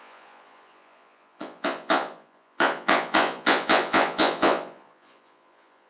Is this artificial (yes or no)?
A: yes